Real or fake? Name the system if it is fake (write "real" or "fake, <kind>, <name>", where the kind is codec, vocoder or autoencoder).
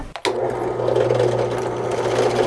real